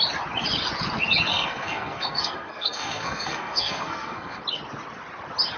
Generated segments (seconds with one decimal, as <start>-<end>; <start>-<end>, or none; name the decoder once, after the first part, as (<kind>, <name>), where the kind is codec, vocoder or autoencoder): 1.3-4.4 (codec, SNAC)